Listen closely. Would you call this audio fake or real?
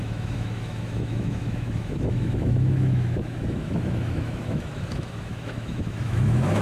fake